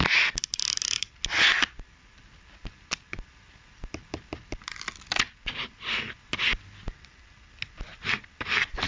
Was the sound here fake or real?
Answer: real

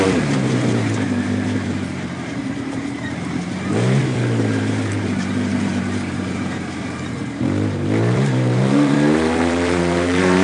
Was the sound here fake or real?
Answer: fake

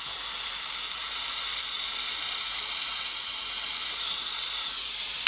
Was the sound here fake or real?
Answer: fake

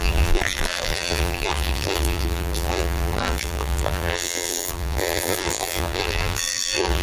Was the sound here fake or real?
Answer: fake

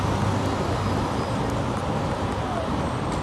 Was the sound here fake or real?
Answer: real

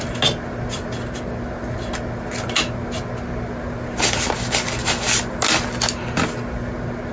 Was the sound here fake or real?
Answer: real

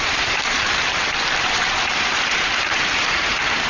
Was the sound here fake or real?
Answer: fake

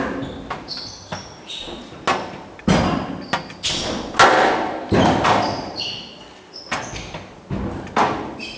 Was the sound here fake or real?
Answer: real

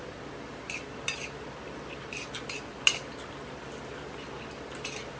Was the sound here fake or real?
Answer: real